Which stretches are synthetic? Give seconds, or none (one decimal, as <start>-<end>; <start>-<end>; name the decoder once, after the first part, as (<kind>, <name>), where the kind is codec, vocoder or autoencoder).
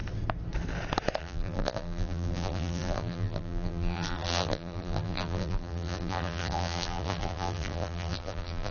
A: 1.2-8.7 (vocoder, BigVGAN v2)